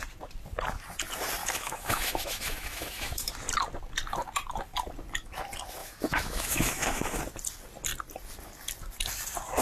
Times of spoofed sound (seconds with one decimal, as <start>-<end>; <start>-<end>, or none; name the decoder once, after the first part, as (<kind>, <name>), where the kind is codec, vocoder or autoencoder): 1.4-3.3 (autoencoder, DAC-VAE); 5.8-7.2